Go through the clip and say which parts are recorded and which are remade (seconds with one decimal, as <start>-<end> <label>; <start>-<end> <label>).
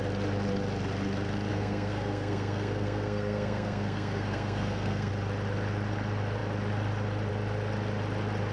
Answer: 0.0-1.5 recorded; 1.5-5.1 remade; 5.1-8.5 recorded